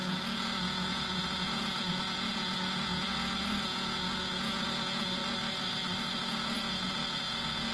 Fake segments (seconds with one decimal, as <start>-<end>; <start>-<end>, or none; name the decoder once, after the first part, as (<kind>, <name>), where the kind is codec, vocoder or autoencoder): 0.0-5.2 (vocoder, Vocos); 6.0-7.7